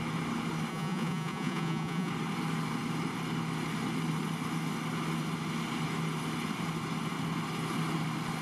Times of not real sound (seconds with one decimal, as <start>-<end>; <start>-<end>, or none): 0.7-2.1